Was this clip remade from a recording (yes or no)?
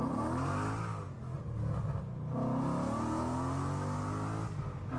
no